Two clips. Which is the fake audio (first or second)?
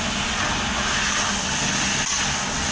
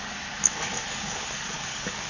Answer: second